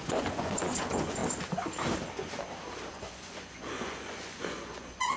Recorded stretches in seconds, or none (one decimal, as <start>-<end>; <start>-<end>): 1.2-2.9